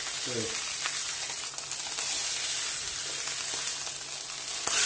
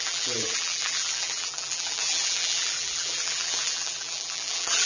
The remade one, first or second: second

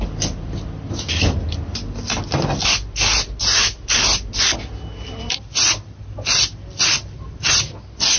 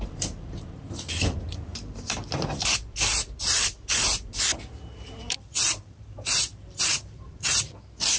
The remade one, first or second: second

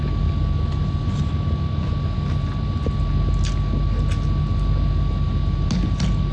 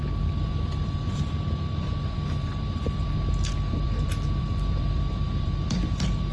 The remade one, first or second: second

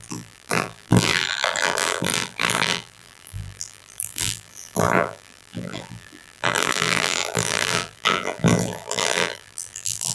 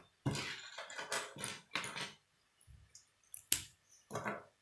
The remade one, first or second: first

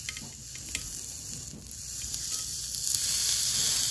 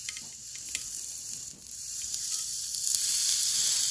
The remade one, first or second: second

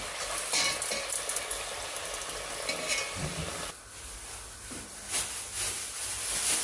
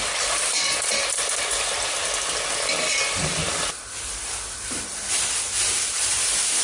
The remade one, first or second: second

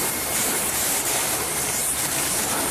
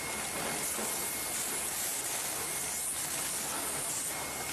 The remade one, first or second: first